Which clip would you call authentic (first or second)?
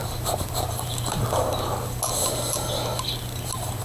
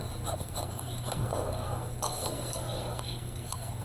first